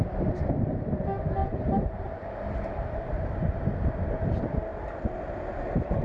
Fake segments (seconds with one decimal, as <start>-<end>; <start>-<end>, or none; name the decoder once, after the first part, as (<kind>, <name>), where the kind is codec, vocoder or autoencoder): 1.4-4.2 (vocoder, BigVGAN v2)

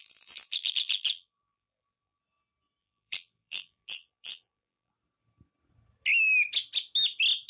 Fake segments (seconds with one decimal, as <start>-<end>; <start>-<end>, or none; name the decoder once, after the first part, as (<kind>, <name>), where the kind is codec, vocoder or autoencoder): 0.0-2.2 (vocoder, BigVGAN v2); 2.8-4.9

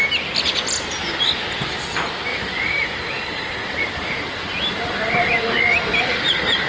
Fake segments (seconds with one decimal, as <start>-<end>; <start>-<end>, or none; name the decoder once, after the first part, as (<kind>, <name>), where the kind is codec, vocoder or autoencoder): 2.3-5.3 (vocoder, BigVGAN v2)

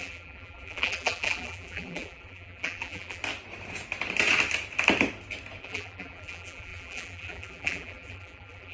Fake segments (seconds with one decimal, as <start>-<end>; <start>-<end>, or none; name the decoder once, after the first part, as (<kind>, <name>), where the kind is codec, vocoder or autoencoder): 0.0-3.2 (vocoder, BigVGAN v2); 5.6-8.7